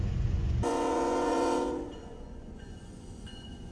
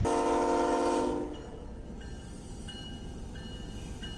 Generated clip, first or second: first